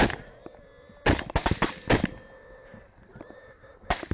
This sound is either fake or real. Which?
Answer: real